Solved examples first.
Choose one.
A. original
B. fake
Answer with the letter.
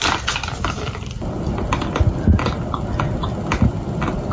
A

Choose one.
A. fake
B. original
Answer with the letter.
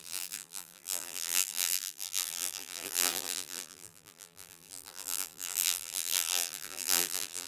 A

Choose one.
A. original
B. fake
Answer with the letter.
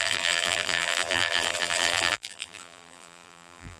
B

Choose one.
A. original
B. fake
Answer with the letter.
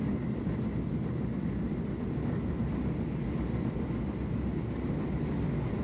A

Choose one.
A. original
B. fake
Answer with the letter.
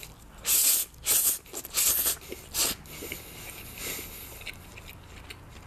A